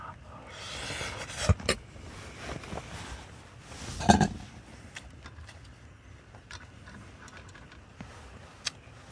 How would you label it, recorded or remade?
recorded